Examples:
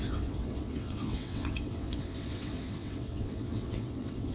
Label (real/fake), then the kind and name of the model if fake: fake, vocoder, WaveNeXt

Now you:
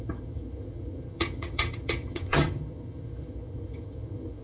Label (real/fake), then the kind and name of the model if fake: fake, vocoder, HiFi-GAN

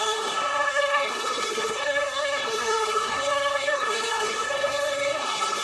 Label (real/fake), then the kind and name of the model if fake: fake, codec, SNAC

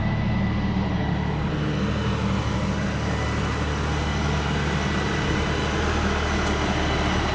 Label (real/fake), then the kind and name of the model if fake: real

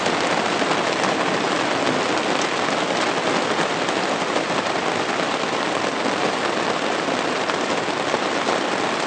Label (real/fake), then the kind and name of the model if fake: real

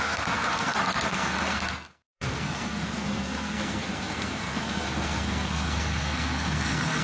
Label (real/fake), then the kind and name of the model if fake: fake, codec, SNAC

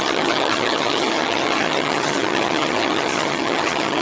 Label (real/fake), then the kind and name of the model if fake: fake, vocoder, HiFi-GAN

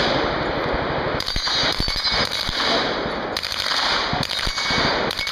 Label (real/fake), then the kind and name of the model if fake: real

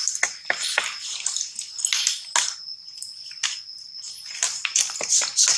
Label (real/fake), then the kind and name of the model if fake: real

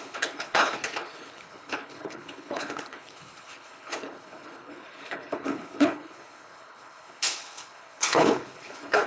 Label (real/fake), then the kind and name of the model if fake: fake, codec, HILCodec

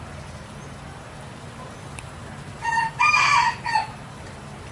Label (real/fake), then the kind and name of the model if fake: real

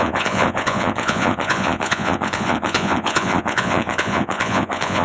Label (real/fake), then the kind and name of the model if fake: fake, vocoder, Vocos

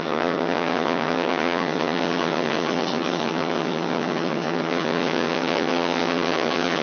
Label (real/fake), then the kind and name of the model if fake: fake, vocoder, HiFi-GAN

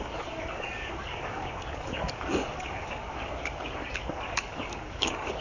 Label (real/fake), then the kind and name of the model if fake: fake, codec, DAC